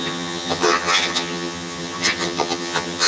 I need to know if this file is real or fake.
fake